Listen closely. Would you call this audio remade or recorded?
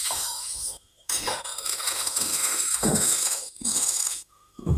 remade